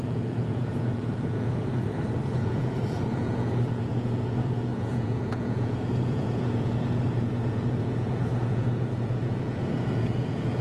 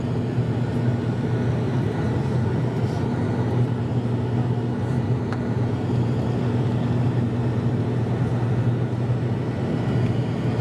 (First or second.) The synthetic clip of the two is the first